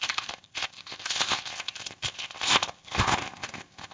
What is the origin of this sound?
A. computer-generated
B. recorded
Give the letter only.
A